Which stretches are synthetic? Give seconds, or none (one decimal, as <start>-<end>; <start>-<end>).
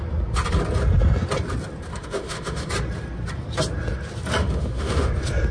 1.9-2.7; 4.4-5.1